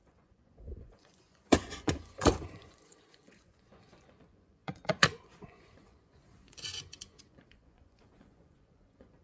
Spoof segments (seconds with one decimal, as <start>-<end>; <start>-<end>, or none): 0.0-9.2